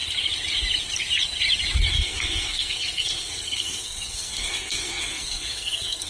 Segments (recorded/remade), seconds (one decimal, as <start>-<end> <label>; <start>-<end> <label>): 0.0-1.9 recorded; 1.9-6.1 remade